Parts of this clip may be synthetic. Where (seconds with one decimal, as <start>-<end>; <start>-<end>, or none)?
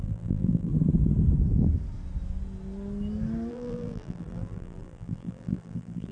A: 0.0-0.7; 3.5-6.1